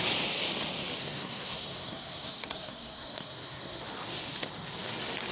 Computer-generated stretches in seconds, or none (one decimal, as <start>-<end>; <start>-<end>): 1.0-3.8